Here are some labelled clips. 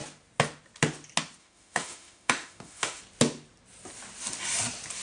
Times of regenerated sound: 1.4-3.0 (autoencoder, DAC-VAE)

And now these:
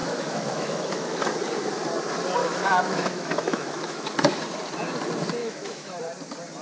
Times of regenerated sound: 0.0-1.2 (autoencoder, DAC-VAE); 2.4-4.4; 5.4-6.0

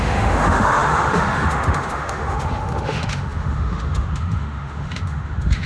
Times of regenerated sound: 0.0-5.7 (autoencoder, DAC-VAE)

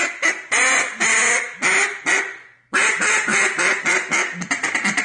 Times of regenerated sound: none